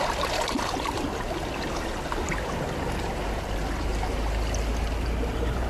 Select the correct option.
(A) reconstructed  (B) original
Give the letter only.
B